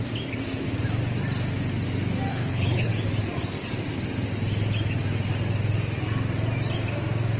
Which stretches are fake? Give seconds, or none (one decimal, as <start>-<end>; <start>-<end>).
2.3-2.9